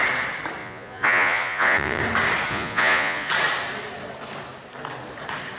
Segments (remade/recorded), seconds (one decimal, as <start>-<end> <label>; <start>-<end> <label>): 0.0-0.6 recorded; 0.6-2.0 remade; 2.0-2.5 recorded; 2.5-3.3 remade; 3.3-5.6 recorded